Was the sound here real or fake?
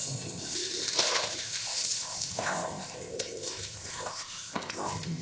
fake